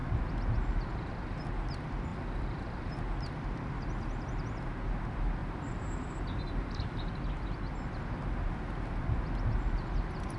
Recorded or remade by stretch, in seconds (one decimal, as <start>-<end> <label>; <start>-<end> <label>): 0.0-2.1 recorded; 2.1-2.9 remade; 2.9-5.4 recorded; 5.4-7.1 remade; 7.1-10.4 recorded